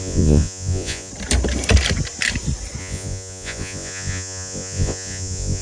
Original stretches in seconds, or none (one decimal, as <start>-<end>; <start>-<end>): 1.1-2.8